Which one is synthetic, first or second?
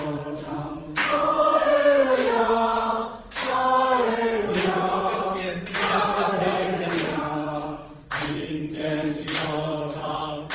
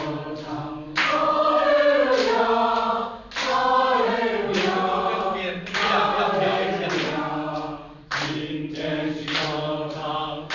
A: first